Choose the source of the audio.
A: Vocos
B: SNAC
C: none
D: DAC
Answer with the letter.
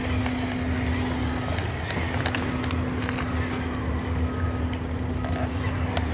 C